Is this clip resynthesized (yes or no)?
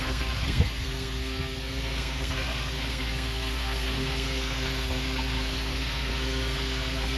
yes